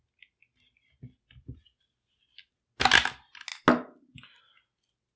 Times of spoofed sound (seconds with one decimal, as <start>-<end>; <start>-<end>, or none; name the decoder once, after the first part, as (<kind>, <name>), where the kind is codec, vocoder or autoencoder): none